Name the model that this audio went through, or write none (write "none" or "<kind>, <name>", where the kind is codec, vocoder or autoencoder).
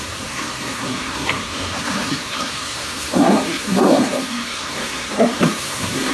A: codec, SNAC